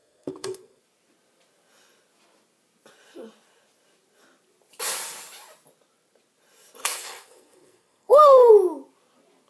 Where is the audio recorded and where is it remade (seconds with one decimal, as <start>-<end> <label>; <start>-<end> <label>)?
0.0-0.8 remade; 0.8-6.8 recorded; 6.8-8.5 remade; 8.5-9.5 recorded